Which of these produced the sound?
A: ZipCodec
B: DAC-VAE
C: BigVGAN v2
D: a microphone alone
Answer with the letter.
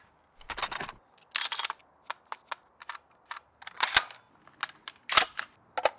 D